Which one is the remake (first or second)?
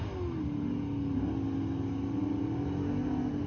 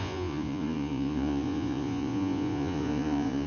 second